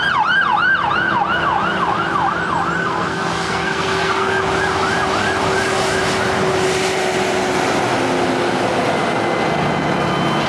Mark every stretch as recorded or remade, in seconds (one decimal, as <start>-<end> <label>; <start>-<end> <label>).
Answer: 0.0-2.8 recorded; 2.8-4.4 remade; 4.4-10.5 recorded